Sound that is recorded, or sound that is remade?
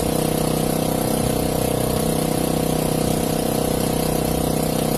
recorded